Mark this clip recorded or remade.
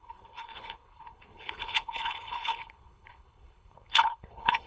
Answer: remade